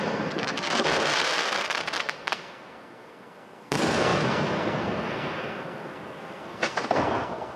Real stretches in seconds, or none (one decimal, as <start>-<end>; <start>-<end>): none